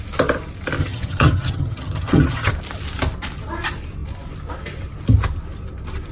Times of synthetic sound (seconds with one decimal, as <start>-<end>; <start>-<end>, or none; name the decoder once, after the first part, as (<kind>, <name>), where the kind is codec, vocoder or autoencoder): 0.8-2.5 (vocoder, HiFi-GAN)